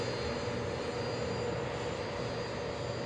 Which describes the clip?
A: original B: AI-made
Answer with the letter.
A